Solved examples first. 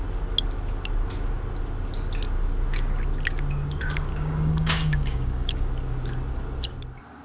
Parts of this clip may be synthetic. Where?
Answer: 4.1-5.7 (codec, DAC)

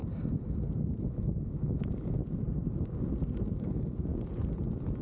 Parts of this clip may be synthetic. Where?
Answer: 1.1-2.2 (codec, DAC); 3.6-4.1

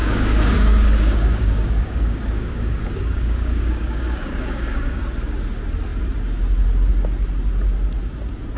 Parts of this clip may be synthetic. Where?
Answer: 0.0-5.0 (codec, DAC)

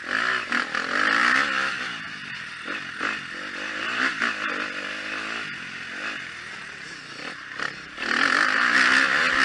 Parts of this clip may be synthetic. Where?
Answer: none

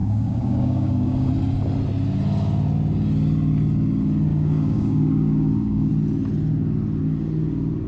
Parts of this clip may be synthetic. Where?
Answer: 0.0-1.3 (codec, DAC); 4.3-5.9